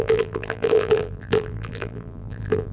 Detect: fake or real fake